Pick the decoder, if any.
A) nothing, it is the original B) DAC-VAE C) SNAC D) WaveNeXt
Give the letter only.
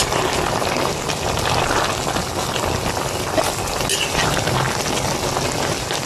A